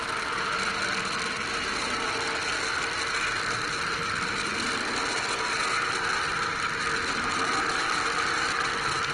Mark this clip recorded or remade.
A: recorded